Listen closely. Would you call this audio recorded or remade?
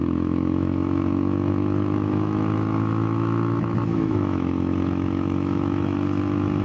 remade